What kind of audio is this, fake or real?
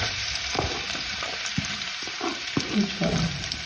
fake